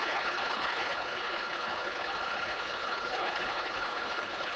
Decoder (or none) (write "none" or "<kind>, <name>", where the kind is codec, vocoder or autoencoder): codec, HILCodec